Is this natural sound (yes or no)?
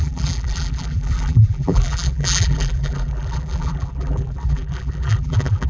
no